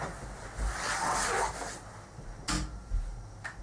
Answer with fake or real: real